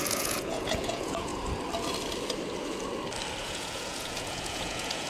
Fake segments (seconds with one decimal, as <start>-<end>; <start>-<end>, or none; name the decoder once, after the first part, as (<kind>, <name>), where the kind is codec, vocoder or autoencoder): 0.0-1.3 (vocoder, Vocos); 3.4-5.1